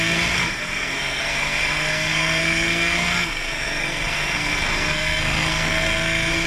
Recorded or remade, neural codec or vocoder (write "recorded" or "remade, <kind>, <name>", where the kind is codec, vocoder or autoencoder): remade, codec, SNAC